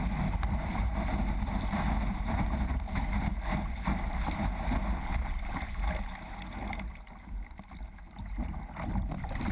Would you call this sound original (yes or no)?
yes